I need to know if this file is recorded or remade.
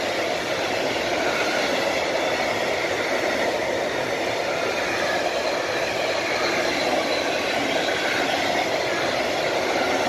recorded